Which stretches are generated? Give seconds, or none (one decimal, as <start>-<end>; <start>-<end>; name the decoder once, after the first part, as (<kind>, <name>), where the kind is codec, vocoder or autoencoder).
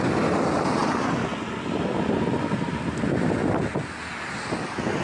none